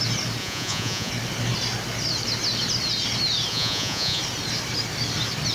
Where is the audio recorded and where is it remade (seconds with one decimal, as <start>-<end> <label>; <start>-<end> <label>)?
0.0-0.4 recorded; 0.4-1.1 remade; 1.1-3.5 recorded; 3.5-4.2 remade; 4.2-5.5 recorded